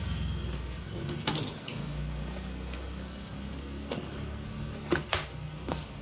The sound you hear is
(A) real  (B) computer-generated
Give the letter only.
B